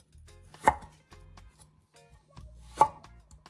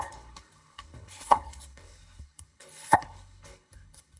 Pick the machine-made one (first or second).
second